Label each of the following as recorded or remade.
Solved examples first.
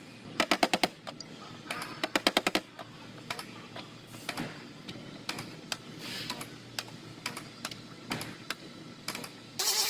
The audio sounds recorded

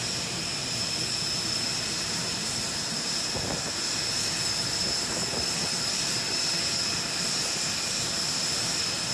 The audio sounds recorded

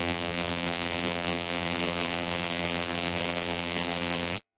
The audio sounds remade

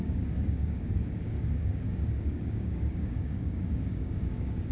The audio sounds remade